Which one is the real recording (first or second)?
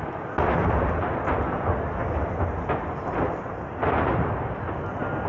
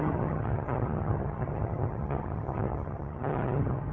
first